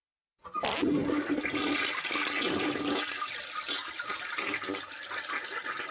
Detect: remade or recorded recorded